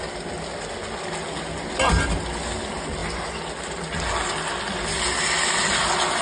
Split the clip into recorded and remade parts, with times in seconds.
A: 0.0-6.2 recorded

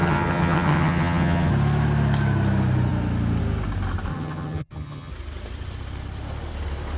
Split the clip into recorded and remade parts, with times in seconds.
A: 0.0-1.5 remade; 1.5-4.1 recorded; 4.1-5.1 remade; 5.1-7.0 recorded

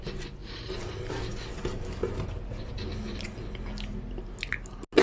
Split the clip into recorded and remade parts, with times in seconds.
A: 0.0-0.4 recorded; 0.4-1.2 remade; 1.2-2.0 recorded; 2.0-2.7 remade; 2.7-5.0 recorded

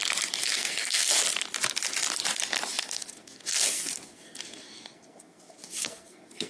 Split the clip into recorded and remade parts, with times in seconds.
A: 0.0-0.4 recorded; 0.4-1.2 remade; 1.2-2.8 recorded; 2.8-6.5 remade

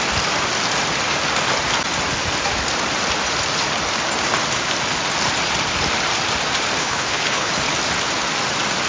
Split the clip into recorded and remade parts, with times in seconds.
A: 0.0-6.8 recorded; 6.8-7.5 remade; 7.5-8.9 recorded